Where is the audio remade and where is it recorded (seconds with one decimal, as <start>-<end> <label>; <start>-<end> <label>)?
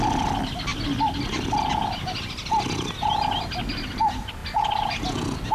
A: 0.0-5.5 recorded